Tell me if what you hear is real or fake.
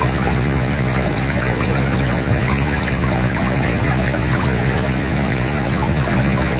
fake